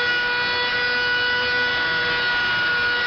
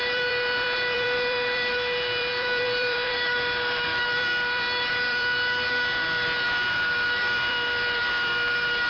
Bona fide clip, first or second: first